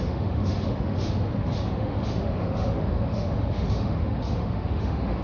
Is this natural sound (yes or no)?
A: no